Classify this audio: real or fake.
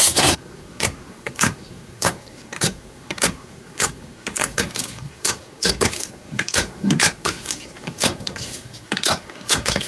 fake